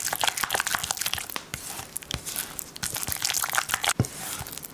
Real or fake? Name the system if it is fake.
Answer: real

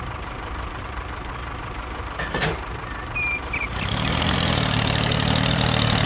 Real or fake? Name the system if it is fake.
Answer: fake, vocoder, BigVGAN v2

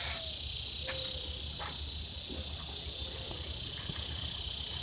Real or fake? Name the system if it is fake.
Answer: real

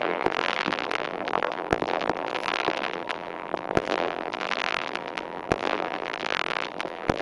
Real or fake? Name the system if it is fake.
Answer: fake, vocoder, BigVGAN v2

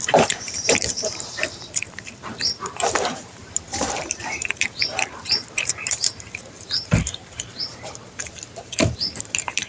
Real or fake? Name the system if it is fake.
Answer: fake, vocoder, BigVGAN v2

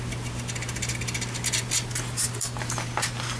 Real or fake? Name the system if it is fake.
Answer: real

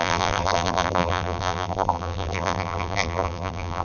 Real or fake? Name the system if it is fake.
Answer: fake, vocoder, BigVGAN v2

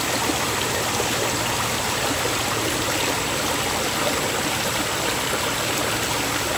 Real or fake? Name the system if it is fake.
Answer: real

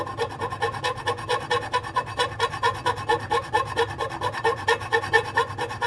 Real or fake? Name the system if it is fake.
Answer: real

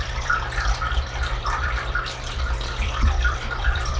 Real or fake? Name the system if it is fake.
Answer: fake, vocoder, BigVGAN v2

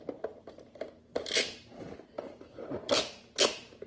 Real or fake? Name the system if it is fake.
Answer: real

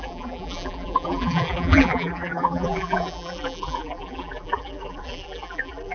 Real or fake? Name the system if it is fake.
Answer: fake, vocoder, BigVGAN v2